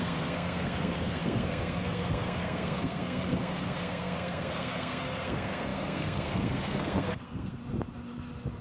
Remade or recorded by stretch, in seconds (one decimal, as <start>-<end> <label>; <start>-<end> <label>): 0.0-7.6 remade; 7.6-8.6 recorded